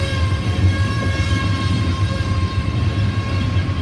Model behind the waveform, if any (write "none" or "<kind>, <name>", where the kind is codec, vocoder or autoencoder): vocoder, BigVGAN v2